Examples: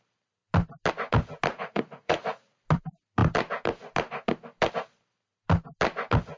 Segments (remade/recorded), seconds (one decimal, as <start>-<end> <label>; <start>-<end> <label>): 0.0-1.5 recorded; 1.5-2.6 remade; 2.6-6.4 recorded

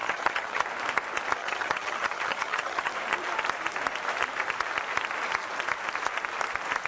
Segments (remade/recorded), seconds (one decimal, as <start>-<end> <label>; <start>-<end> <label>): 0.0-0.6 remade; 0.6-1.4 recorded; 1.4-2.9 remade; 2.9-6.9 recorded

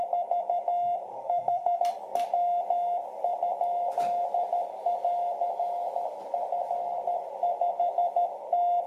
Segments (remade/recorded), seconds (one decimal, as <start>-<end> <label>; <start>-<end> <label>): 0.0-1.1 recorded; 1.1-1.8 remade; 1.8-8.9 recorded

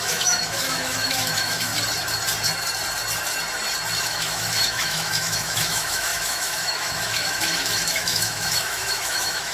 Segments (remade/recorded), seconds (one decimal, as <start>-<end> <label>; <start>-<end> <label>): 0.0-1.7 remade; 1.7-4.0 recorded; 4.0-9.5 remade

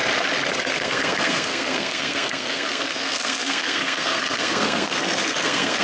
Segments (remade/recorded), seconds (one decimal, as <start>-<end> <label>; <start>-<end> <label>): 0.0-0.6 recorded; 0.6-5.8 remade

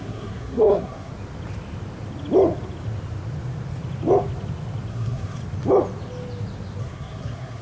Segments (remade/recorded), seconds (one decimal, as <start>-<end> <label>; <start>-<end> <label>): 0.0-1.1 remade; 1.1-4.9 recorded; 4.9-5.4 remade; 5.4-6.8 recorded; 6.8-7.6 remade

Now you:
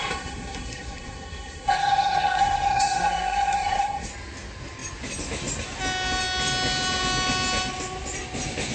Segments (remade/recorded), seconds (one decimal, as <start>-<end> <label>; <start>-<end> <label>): 0.0-4.1 remade; 4.1-8.7 recorded

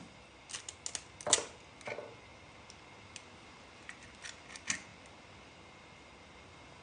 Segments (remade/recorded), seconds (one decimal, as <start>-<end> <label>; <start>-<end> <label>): 0.0-6.8 recorded